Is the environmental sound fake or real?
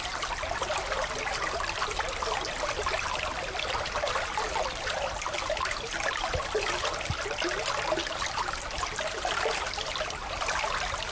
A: real